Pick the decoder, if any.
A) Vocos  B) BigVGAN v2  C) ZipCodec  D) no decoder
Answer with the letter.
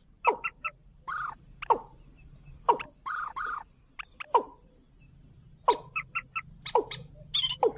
D